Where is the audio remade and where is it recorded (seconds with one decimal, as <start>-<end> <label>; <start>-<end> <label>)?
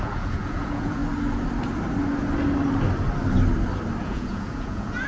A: 0.0-1.0 remade; 1.0-4.0 recorded; 4.0-5.1 remade